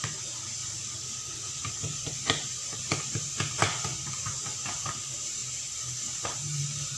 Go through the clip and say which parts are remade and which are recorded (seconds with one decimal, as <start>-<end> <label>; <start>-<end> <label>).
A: 0.0-0.6 remade; 0.6-1.7 recorded; 1.7-3.9 remade; 3.9-4.9 recorded; 4.9-5.4 remade; 5.4-6.0 recorded; 6.0-7.0 remade